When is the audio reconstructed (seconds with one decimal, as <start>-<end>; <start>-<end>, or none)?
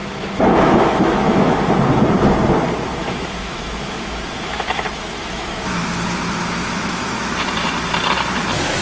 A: 0.0-1.7; 3.0-7.3